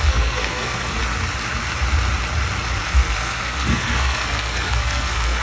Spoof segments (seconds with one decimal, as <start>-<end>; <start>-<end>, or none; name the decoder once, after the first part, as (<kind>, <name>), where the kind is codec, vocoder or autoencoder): 0.0-1.0 (codec, SNAC); 2.8-5.4